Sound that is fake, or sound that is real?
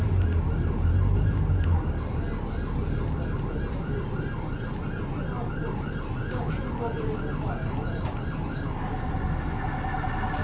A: real